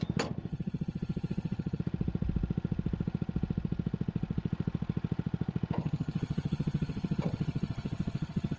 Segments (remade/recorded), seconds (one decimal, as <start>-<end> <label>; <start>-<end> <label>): 0.0-0.5 recorded; 0.5-1.8 remade; 1.8-5.8 recorded; 5.8-8.6 remade